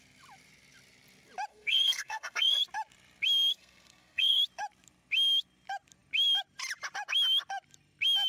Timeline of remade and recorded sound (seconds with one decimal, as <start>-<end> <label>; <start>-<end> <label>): 0.0-1.5 recorded; 1.5-2.6 remade; 2.6-3.5 recorded; 3.5-4.4 remade; 4.4-8.3 recorded

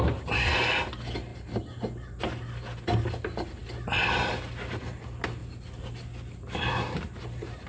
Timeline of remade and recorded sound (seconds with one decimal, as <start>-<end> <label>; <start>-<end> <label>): 0.0-7.7 recorded

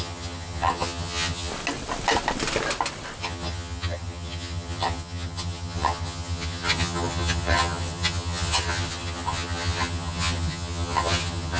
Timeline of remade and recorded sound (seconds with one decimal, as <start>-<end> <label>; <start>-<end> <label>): 0.0-1.5 remade; 1.5-3.2 recorded; 3.2-11.6 remade

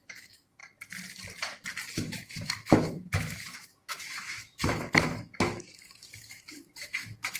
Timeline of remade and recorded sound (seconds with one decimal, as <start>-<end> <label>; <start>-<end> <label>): 0.0-0.6 remade; 0.6-1.9 recorded; 1.9-7.4 remade

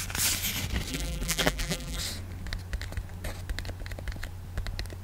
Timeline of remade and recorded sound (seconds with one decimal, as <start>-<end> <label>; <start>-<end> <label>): 0.0-0.9 recorded; 0.9-2.0 remade; 2.0-5.0 recorded

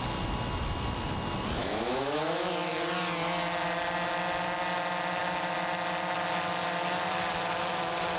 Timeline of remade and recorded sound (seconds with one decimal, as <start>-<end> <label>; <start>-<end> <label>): 0.0-1.6 recorded; 1.6-2.7 remade; 2.7-8.2 recorded